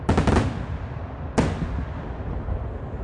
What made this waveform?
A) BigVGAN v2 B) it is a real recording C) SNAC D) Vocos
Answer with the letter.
B